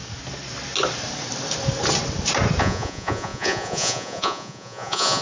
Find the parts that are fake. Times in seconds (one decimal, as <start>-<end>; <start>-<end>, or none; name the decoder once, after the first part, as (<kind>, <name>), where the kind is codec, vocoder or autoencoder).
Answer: 2.6-5.2 (vocoder, Vocos)